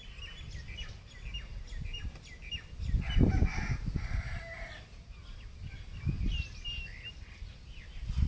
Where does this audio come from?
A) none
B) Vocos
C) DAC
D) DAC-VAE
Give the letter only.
A